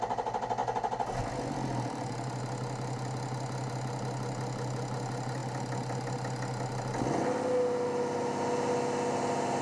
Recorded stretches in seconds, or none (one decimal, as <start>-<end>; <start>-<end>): 0.0-9.6